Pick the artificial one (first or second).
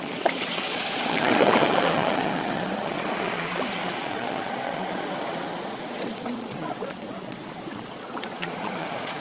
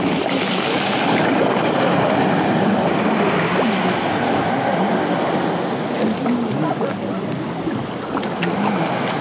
first